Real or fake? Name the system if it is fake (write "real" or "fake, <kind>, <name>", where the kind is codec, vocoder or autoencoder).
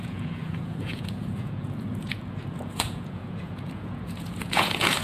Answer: fake, vocoder, Vocos